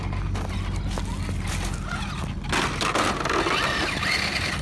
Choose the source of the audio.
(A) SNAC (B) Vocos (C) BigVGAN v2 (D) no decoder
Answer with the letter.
D